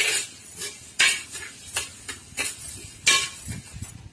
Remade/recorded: recorded